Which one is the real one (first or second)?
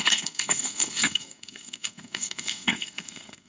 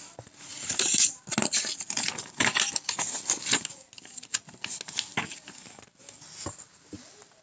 second